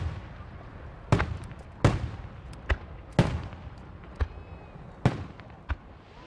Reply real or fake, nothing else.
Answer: real